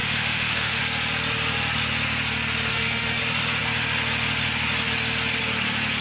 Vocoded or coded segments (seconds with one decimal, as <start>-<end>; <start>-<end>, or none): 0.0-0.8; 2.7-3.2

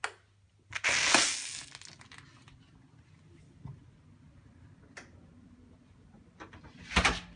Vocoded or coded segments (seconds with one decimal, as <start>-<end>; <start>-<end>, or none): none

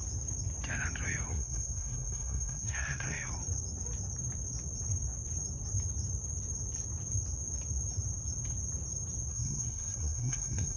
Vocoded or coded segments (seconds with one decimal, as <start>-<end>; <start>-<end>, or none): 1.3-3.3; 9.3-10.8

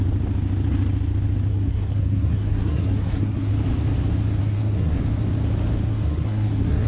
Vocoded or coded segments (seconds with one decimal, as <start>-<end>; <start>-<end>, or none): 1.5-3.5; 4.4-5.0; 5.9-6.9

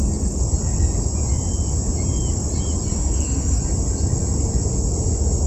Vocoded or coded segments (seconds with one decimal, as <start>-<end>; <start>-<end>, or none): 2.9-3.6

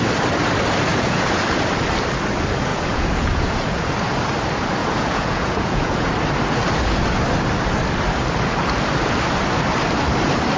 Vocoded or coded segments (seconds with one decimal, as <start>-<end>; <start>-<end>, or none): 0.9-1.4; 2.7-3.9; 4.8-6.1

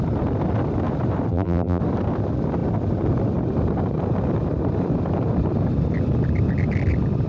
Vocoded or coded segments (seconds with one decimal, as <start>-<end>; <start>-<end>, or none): 1.3-1.8

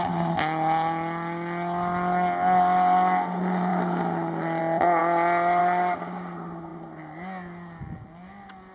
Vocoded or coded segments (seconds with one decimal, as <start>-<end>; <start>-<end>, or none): none